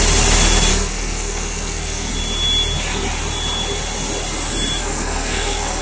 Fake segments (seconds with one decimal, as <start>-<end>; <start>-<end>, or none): 0.7-2.1; 4.8-5.8